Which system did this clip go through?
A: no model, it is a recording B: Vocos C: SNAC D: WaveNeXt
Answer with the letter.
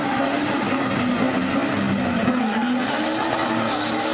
A